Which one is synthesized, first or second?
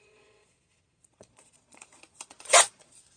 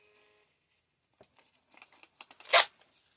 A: first